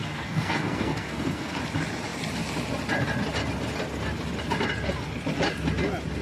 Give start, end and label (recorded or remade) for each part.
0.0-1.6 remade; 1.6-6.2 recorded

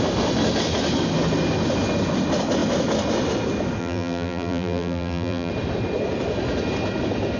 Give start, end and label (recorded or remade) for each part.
0.0-3.8 recorded; 3.8-5.5 remade; 5.5-7.4 recorded

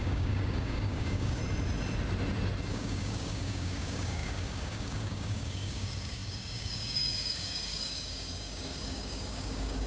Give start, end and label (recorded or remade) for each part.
0.0-1.4 remade; 1.4-2.7 recorded; 2.7-9.9 remade

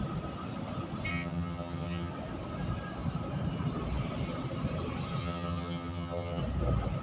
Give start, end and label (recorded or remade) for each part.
0.0-1.1 recorded; 1.1-2.1 remade; 2.1-5.2 recorded; 5.2-6.4 remade; 6.4-7.0 recorded

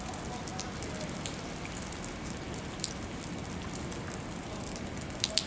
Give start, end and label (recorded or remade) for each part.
0.0-5.5 recorded

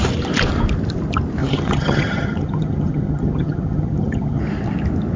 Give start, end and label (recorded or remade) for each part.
0.0-1.4 recorded; 1.4-4.4 remade; 4.4-5.2 recorded

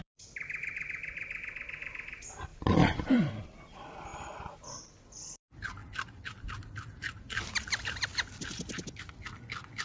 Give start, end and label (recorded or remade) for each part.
0.0-4.1 remade; 4.1-4.9 recorded; 4.9-5.8 remade; 5.8-6.4 recorded; 6.4-9.8 remade